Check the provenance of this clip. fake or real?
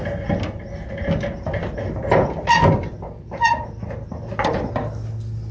real